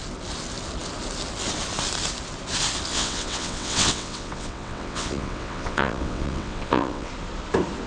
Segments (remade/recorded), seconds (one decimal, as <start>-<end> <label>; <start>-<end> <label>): 0.0-2.9 recorded; 2.9-7.1 remade; 7.1-7.9 recorded